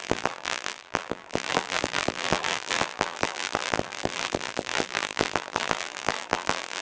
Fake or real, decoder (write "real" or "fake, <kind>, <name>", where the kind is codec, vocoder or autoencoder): fake, vocoder, BigVGAN v2